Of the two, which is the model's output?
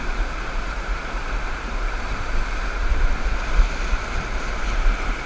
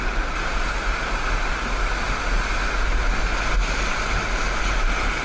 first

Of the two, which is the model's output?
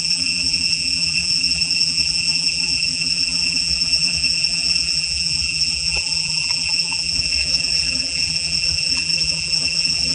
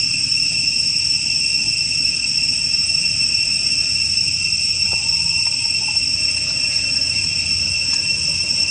first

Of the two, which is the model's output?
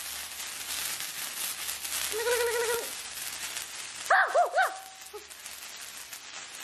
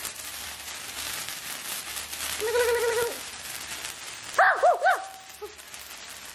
second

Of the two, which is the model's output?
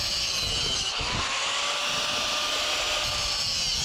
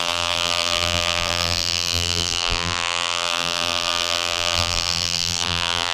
second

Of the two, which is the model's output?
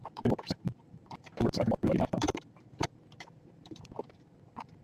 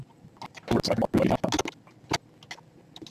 first